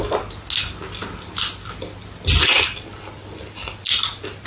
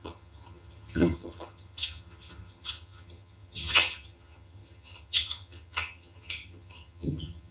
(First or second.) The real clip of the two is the first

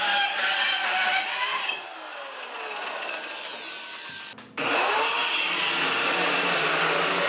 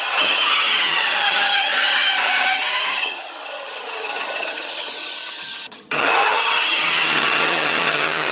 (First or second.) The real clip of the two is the first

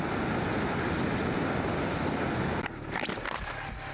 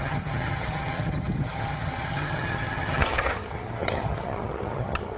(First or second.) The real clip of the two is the first